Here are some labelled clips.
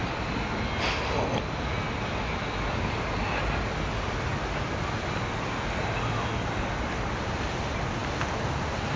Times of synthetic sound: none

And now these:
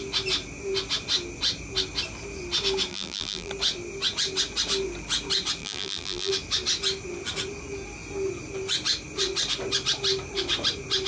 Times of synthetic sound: 2.9-3.5 (vocoder, BigVGAN v2); 5.6-6.3